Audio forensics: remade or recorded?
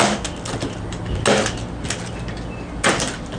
recorded